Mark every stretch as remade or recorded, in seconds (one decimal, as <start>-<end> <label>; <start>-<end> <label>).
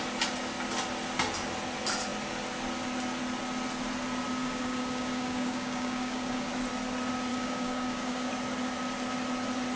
0.0-4.4 recorded; 4.4-6.5 remade; 6.5-7.3 recorded; 7.3-8.3 remade; 8.3-9.8 recorded